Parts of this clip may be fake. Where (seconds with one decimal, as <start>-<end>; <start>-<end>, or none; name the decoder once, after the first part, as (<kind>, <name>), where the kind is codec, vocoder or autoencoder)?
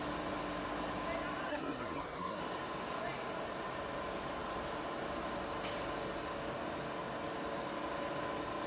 1.5-2.4 (codec, SNAC)